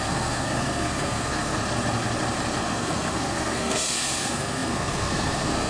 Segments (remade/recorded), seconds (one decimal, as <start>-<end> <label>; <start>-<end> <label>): 0.0-1.6 remade; 1.6-2.6 recorded; 2.6-5.7 remade